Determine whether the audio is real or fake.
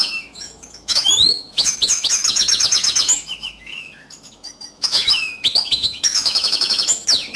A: fake